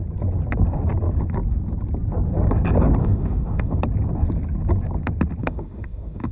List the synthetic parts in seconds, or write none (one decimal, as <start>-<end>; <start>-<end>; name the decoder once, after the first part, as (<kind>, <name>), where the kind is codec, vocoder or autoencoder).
3.0-3.8 (autoencoder, DAC-VAE); 5.4-6.3